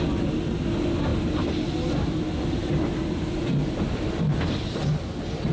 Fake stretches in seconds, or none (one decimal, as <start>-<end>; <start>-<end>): none